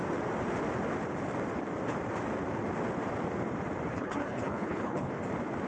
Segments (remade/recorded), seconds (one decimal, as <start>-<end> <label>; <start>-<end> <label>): 0.0-3.9 recorded; 3.9-5.1 remade; 5.1-5.7 recorded